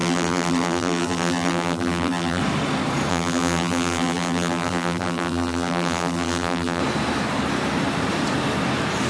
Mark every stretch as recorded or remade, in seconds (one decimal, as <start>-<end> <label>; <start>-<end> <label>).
0.0-2.4 remade; 2.4-3.1 recorded; 3.1-6.8 remade; 6.8-9.1 recorded